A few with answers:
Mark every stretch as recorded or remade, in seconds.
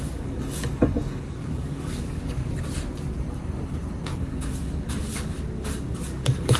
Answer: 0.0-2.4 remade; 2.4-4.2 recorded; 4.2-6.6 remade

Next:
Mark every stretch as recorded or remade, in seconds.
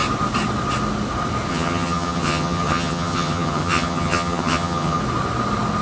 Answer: 0.0-1.5 recorded; 1.5-5.0 remade; 5.0-5.8 recorded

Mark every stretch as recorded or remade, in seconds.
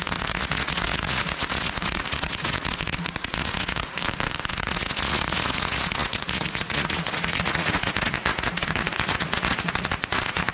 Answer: 0.0-4.0 remade; 4.0-4.5 recorded; 4.5-10.5 remade